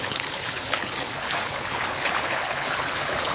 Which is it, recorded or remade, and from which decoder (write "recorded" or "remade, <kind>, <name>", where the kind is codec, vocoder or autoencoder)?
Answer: remade, codec, HILCodec